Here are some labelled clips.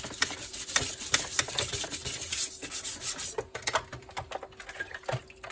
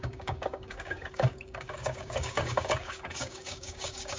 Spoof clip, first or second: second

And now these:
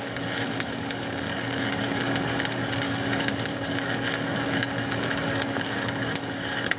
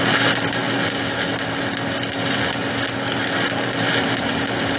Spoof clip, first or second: first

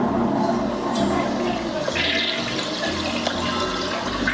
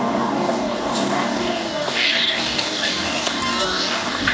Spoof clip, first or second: second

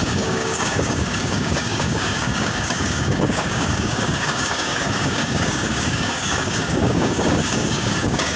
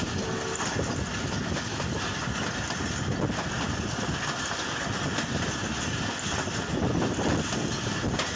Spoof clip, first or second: first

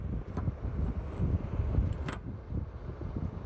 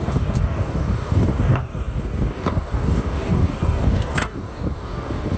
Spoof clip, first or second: second